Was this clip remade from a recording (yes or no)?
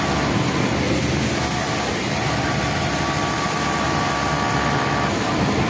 no